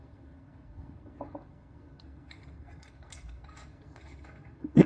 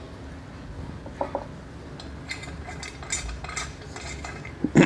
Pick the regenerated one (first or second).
first